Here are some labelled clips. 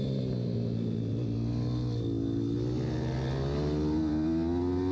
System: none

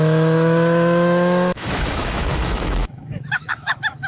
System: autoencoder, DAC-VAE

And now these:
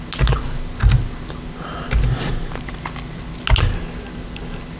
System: none